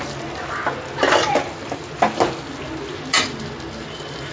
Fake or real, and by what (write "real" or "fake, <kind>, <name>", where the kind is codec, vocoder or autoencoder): real